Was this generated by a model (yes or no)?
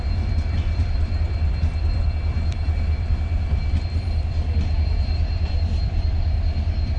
yes